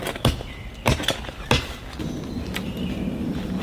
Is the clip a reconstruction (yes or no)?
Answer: no